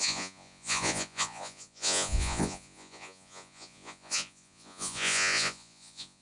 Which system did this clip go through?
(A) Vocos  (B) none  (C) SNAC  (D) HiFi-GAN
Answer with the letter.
A